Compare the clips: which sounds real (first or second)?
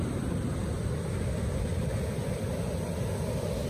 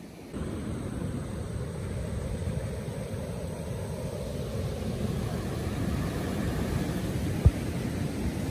first